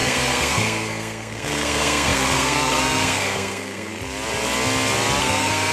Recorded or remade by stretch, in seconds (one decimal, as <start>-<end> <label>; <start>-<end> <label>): 0.0-3.9 remade; 3.9-5.2 recorded; 5.2-5.7 remade